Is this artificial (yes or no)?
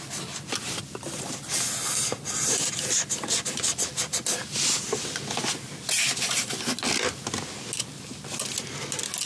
no